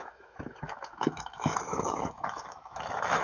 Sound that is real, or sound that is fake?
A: fake